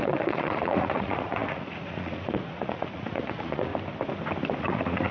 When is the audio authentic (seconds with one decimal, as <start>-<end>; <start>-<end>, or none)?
3.7-4.6